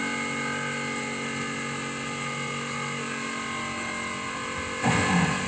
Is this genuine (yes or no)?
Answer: yes